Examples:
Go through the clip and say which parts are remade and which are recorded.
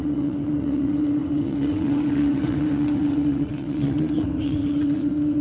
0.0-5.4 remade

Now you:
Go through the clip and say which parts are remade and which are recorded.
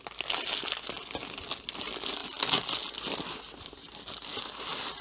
0.0-5.0 recorded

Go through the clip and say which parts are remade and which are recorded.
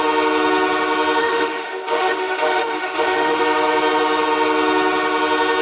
0.0-1.2 recorded; 1.2-3.4 remade; 3.4-5.6 recorded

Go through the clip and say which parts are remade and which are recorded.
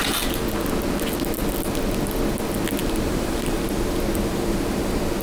0.0-2.8 recorded; 2.8-3.6 remade; 3.6-5.2 recorded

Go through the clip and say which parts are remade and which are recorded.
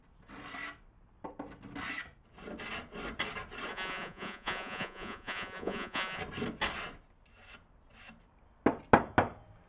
0.0-3.7 recorded; 3.7-6.2 remade; 6.2-9.7 recorded